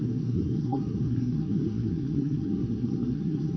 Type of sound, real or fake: fake